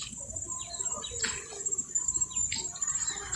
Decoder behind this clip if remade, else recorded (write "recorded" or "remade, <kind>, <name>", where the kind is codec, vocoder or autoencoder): remade, vocoder, BigVGAN v2